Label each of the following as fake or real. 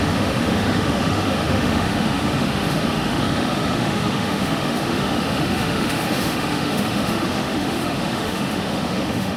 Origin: fake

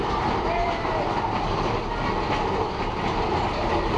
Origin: real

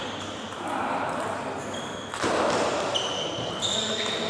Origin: real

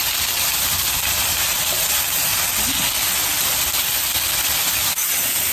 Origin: real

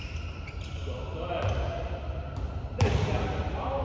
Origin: real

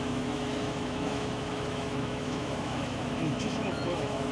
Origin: fake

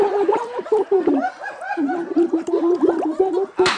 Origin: real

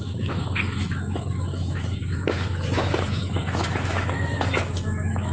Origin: fake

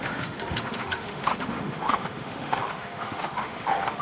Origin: fake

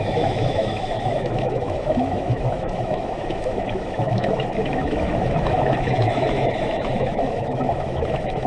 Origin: fake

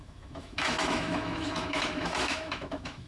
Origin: fake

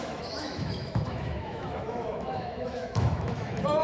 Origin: fake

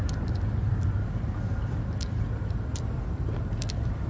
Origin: real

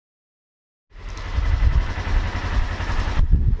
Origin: real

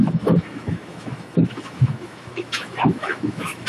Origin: fake